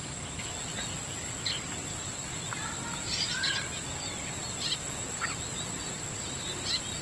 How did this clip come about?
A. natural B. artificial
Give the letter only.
A